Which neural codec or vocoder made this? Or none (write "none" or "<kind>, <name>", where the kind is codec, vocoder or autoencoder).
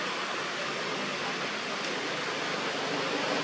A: none